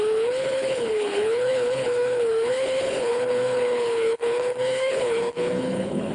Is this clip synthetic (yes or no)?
yes